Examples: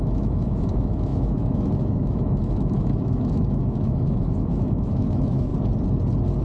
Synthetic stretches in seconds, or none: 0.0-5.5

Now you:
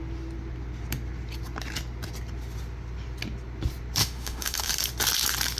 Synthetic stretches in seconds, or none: 4.0-4.7

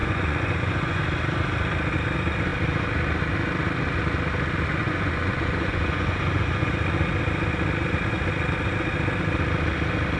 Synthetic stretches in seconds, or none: 0.0-1.0; 4.8-6.7

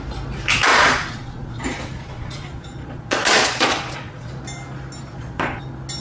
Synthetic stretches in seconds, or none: 0.7-4.3; 5.1-5.6

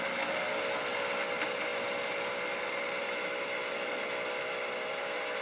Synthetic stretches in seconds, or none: none

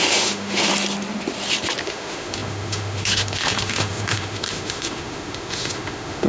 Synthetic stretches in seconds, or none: 0.0-0.7; 1.8-6.3

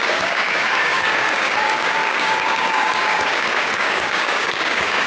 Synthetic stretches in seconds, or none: 0.0-5.1

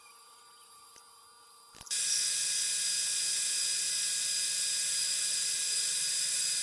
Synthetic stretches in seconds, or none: 0.0-0.9; 4.9-6.6